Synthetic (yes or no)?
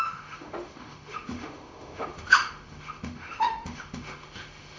yes